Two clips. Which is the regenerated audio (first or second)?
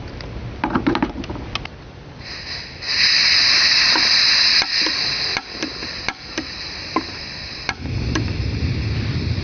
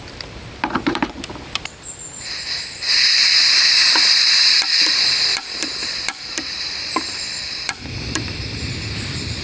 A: second